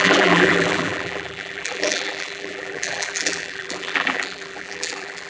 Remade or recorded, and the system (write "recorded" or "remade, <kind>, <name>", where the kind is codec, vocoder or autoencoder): remade, vocoder, BigVGAN v2